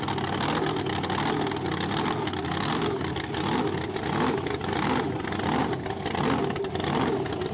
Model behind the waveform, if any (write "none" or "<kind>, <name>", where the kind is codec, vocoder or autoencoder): none